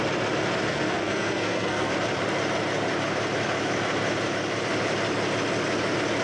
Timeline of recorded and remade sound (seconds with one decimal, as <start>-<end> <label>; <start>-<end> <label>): 0.0-0.7 recorded; 0.7-1.9 remade; 1.9-6.2 recorded